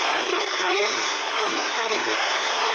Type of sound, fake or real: fake